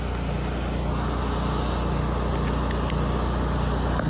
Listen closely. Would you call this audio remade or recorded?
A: recorded